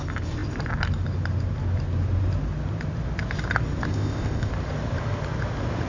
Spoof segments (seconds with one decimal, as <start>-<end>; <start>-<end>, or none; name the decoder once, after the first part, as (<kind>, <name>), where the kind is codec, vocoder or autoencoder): 3.9-4.5 (codec, ZipCodec)